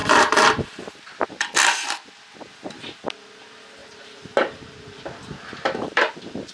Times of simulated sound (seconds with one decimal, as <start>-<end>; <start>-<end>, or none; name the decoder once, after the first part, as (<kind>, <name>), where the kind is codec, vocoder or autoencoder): 0.0-1.5 (vocoder, BigVGAN v2); 3.8-6.1